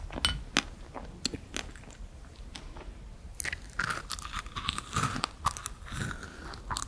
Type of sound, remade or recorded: recorded